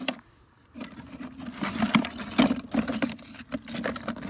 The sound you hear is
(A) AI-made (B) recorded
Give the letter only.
B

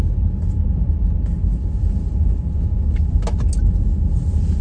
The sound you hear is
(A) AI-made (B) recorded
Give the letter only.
B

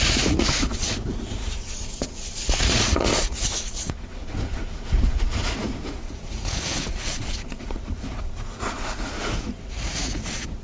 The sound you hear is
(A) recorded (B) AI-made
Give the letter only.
B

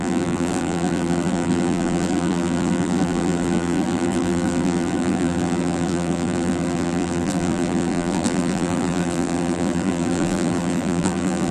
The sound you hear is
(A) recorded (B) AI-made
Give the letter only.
B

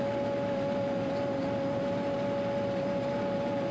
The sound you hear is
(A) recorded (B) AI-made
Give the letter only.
A